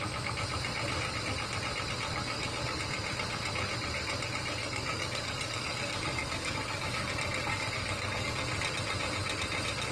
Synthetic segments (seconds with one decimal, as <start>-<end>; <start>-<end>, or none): 2.2-2.8; 4.6-7.1; 7.5-8.3